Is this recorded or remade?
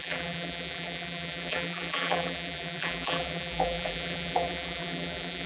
remade